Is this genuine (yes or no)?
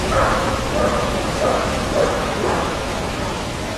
no